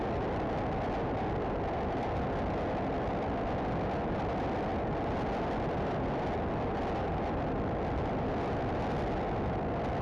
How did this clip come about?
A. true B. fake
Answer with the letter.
A